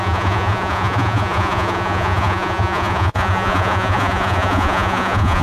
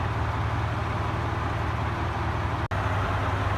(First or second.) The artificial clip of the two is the first